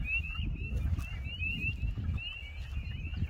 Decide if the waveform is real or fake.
real